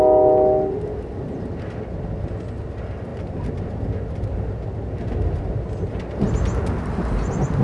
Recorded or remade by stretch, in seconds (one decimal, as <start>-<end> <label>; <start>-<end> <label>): 0.0-7.6 recorded